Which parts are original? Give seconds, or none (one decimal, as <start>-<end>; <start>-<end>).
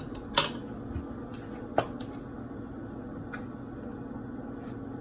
0.0-5.0